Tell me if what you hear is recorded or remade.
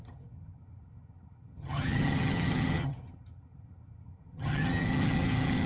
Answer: remade